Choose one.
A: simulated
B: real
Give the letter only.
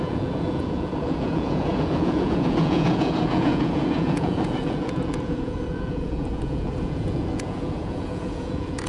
A